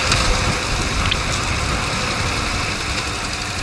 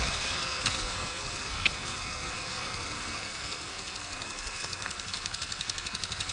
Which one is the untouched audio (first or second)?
first